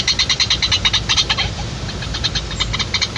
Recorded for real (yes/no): yes